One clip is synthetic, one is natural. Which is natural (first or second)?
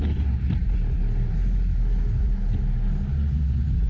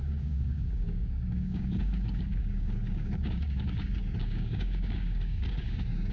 first